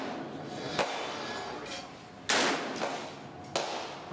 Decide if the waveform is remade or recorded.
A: recorded